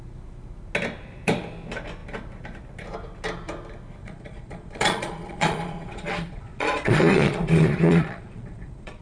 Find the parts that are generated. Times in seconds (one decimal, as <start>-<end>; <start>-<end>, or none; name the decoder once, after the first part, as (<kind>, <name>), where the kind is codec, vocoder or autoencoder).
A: 4.0-9.0 (vocoder, Vocos)